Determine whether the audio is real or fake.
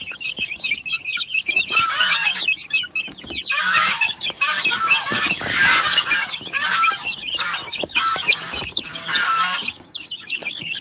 fake